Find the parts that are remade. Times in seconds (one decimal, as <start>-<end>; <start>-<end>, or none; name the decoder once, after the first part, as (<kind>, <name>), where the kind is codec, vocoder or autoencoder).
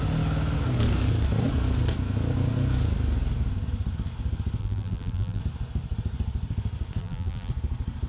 4.6-5.4 (vocoder, BigVGAN v2); 7.0-7.5